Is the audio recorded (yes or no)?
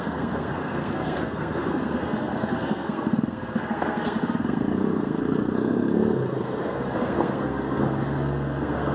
no